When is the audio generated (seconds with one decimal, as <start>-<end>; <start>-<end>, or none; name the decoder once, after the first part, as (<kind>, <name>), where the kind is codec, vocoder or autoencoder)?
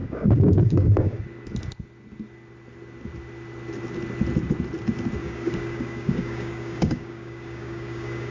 0.0-1.2 (codec, DAC); 5.2-8.3